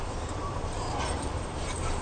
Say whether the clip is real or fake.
fake